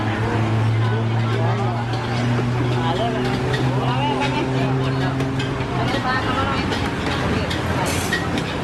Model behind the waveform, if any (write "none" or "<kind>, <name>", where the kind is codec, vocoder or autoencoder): none